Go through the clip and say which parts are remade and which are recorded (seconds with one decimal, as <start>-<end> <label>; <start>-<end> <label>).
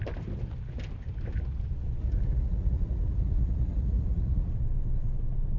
0.0-2.0 recorded; 2.0-4.5 remade; 4.5-5.6 recorded